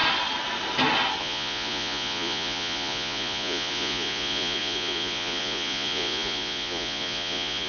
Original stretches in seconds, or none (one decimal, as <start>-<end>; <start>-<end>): 0.0-1.2